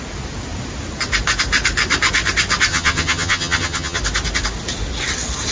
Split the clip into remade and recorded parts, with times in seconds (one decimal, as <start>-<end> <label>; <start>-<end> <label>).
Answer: 0.0-2.7 recorded; 2.7-4.0 remade; 4.0-5.5 recorded